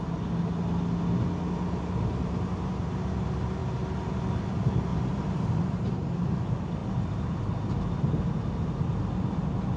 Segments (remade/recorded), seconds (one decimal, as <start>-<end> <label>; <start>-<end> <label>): 0.0-9.8 recorded